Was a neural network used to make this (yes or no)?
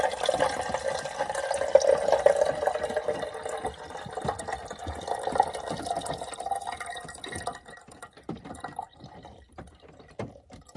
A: no